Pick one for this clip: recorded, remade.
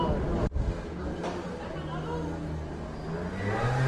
recorded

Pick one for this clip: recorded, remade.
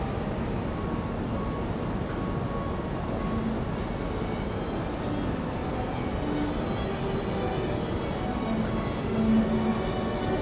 recorded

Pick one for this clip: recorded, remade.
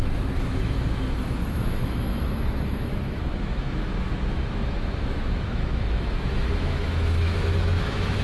remade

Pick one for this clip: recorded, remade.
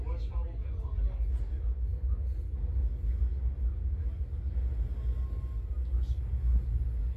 recorded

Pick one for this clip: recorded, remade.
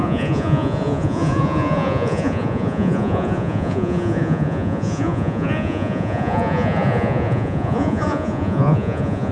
remade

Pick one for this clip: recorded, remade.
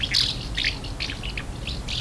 recorded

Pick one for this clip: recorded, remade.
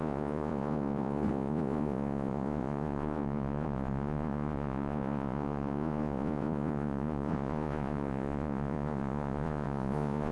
remade